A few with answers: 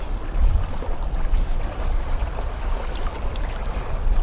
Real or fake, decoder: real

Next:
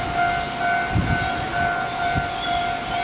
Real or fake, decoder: real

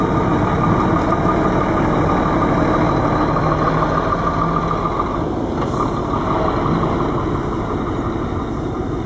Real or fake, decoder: real